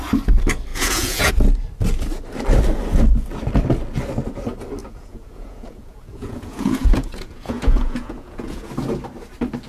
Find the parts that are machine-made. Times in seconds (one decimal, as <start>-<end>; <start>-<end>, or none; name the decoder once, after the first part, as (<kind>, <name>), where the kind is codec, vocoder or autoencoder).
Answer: 0.7-1.3 (vocoder, Vocos); 4.8-8.7